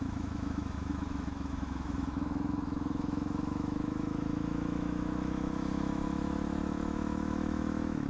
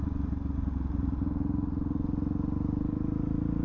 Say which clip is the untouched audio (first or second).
second